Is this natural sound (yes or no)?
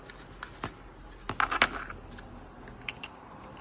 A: yes